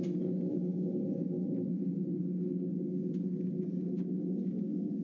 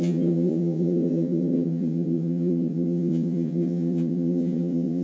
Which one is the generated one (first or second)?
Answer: second